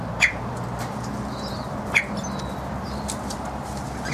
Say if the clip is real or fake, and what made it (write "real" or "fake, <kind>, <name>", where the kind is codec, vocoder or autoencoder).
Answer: real